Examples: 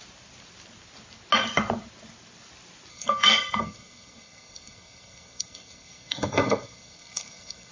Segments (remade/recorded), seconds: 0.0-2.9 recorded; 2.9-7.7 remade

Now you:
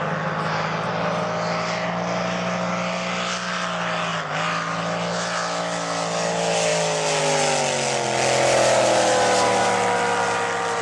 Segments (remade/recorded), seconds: 0.0-10.8 recorded